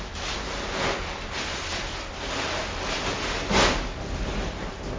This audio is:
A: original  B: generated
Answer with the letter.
A